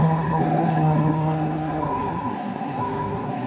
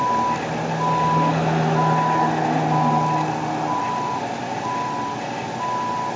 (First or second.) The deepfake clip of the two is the first